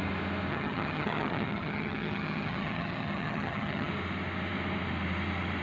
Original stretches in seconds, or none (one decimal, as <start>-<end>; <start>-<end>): 0.0-0.5; 3.9-5.6